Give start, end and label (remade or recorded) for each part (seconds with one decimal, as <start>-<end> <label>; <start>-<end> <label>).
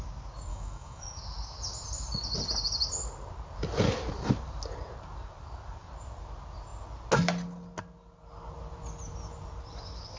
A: 0.0-0.5 recorded; 0.5-1.2 remade; 1.2-10.2 recorded